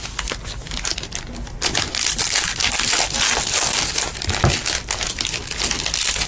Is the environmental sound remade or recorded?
recorded